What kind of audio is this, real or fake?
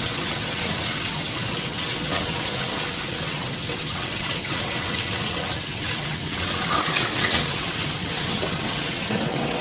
fake